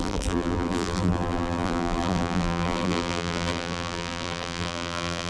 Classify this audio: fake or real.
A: fake